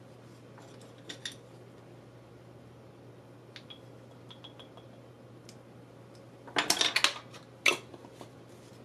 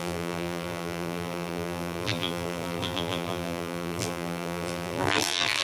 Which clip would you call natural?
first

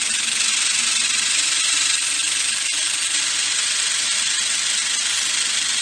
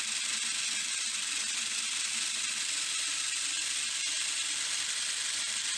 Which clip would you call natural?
second